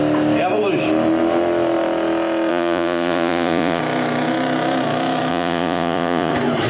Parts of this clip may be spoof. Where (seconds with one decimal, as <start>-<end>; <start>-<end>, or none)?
2.5-3.8; 5.3-6.3